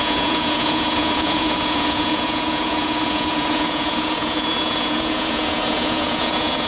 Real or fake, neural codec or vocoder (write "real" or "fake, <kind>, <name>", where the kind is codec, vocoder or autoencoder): fake, vocoder, Vocos